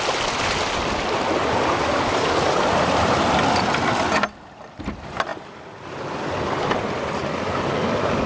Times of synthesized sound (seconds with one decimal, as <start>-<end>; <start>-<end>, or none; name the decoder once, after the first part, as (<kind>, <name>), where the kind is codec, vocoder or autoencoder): none